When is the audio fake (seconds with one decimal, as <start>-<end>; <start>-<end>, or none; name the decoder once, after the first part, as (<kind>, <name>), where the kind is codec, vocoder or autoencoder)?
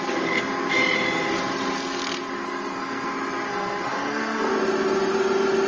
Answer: 2.4-3.1 (codec, SNAC); 3.5-4.5